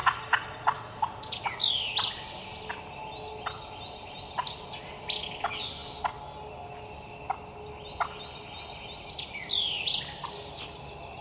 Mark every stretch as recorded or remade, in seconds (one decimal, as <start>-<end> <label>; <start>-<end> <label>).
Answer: 0.0-11.2 recorded